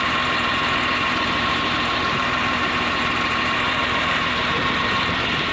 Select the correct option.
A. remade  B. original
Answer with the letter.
A